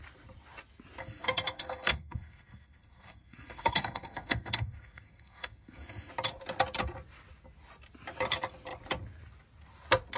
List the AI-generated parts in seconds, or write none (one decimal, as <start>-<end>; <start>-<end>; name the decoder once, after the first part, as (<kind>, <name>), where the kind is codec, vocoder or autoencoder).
1.0-6.1 (codec, SNAC)